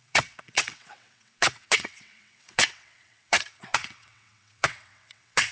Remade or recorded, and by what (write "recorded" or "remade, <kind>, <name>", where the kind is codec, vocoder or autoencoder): remade, vocoder, WaveNeXt